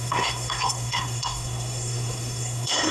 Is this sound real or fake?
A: fake